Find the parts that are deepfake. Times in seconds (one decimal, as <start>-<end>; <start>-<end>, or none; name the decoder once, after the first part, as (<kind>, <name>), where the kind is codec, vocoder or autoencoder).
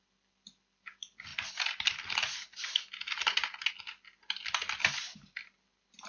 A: none